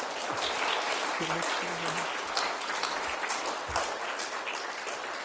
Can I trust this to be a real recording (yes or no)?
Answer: yes